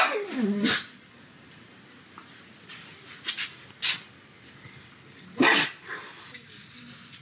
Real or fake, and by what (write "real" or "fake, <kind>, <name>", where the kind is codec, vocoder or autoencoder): real